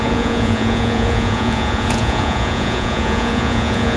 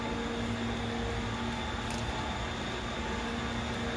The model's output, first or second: first